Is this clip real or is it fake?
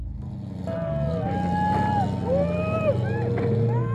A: real